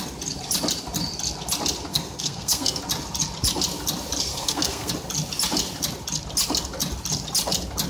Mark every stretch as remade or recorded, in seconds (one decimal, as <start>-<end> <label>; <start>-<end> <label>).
0.0-1.9 recorded; 1.9-2.8 remade; 2.8-4.3 recorded; 4.3-4.9 remade; 4.9-7.9 recorded

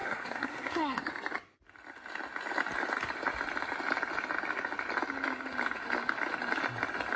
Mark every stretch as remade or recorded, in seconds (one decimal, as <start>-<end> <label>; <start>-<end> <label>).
0.0-1.1 remade; 1.1-7.2 recorded

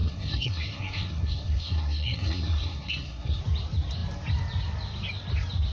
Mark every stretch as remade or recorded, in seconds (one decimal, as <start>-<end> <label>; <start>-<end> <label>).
0.0-3.4 remade; 3.4-5.7 recorded

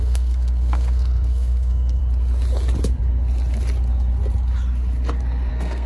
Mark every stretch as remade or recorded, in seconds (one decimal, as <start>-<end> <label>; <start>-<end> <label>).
0.0-2.0 remade; 2.0-5.5 recorded; 5.5-5.9 remade

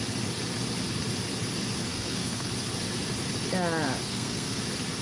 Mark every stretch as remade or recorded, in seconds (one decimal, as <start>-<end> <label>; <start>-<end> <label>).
0.0-1.9 recorded; 1.9-2.5 remade; 2.5-4.1 recorded; 4.1-4.6 remade; 4.6-5.0 recorded

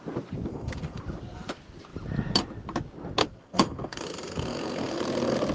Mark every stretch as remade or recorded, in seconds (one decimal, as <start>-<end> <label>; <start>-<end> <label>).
0.0-0.5 recorded; 0.5-1.0 remade; 1.0-3.2 recorded; 3.2-5.0 remade; 5.0-5.5 recorded